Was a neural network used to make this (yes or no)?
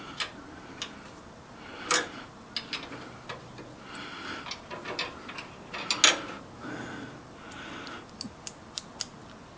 no